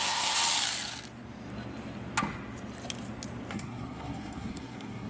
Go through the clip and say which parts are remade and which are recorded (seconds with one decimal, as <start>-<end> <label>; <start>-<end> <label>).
0.0-0.4 remade; 0.4-3.5 recorded; 3.5-5.1 remade